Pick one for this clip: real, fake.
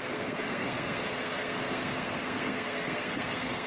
fake